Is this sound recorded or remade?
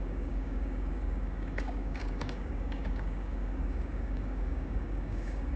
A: remade